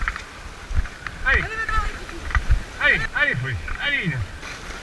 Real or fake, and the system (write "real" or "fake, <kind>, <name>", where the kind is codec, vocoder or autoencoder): real